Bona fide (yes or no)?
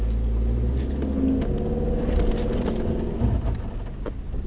yes